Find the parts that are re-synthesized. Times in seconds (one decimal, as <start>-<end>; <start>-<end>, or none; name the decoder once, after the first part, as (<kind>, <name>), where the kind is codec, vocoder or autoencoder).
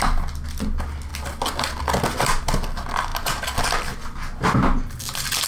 none